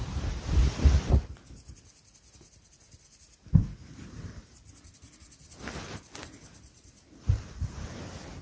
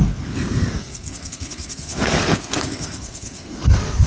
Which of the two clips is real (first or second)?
first